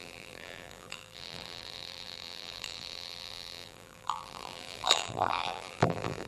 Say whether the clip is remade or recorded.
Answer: remade